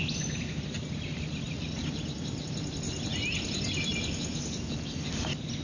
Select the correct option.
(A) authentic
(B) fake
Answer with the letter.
A